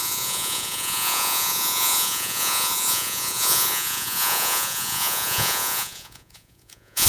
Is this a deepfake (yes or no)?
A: yes